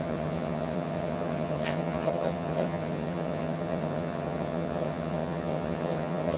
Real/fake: fake